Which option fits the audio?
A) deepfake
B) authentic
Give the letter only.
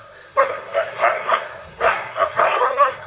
A